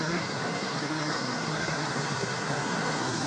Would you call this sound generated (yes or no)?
yes